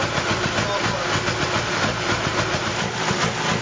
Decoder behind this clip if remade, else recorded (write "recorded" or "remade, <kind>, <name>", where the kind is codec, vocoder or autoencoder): recorded